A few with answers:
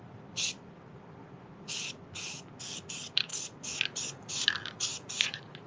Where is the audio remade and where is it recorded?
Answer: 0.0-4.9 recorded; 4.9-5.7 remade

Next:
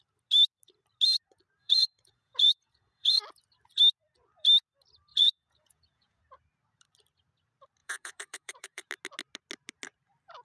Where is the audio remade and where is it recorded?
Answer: 0.0-1.6 recorded; 1.6-3.2 remade; 3.2-5.1 recorded; 5.1-6.2 remade; 6.2-7.8 recorded; 7.8-8.9 remade; 8.9-10.4 recorded

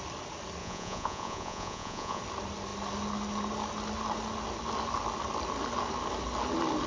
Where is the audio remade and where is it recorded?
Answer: 0.0-0.6 recorded; 0.6-2.2 remade; 2.2-6.9 recorded

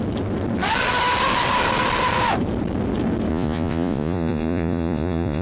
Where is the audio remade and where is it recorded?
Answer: 0.0-3.3 recorded; 3.3-5.4 remade

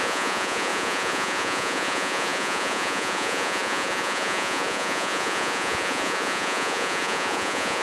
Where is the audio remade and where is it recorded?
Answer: 0.0-7.8 remade